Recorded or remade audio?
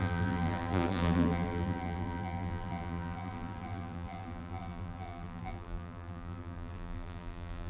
remade